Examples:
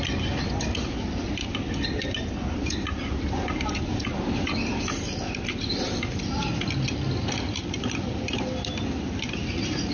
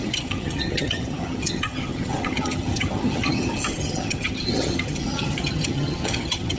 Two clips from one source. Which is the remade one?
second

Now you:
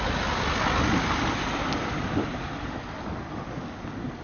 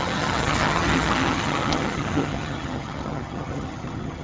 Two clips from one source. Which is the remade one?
second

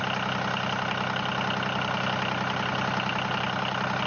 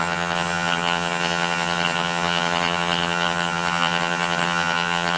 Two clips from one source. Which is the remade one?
second